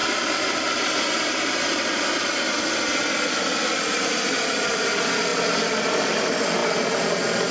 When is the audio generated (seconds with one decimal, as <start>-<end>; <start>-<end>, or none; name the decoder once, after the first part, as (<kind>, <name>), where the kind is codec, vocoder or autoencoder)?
none